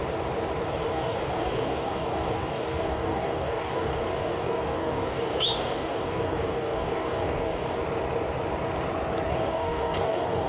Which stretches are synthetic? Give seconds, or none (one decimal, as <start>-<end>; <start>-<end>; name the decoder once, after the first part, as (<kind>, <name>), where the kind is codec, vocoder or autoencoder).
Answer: 0.7-7.8 (codec, DAC); 9.3-10.5